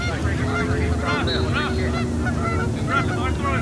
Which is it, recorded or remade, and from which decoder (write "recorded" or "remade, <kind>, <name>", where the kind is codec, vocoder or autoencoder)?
recorded